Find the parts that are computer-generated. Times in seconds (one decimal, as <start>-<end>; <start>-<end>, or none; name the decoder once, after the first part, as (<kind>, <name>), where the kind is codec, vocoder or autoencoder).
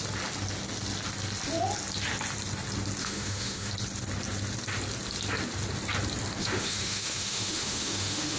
3.0-3.7 (autoencoder, DAC-VAE); 6.4-8.4